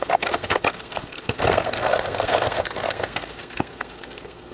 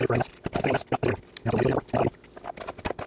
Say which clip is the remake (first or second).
first